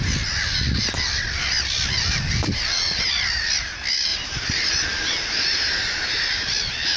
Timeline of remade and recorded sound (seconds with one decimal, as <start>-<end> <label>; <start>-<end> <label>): 0.0-4.1 recorded; 4.1-6.2 remade; 6.2-7.0 recorded